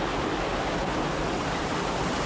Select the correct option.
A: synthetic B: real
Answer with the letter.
B